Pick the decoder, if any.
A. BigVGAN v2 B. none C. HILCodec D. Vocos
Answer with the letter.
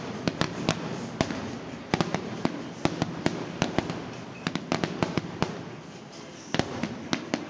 B